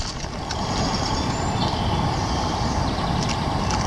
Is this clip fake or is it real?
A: real